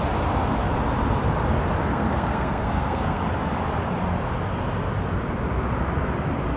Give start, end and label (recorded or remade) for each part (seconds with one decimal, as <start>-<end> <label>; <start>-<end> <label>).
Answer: 0.0-1.8 recorded; 1.8-3.2 remade; 3.2-6.6 recorded